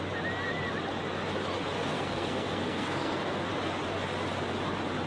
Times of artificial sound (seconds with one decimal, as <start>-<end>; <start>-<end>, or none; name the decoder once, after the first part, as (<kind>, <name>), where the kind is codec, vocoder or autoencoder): 1.9-3.5 (codec, SNAC)